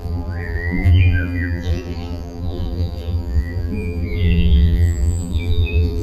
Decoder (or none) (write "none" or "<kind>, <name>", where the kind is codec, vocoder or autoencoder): vocoder, BigVGAN v2